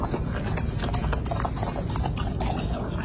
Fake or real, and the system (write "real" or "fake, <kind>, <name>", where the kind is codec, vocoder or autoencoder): real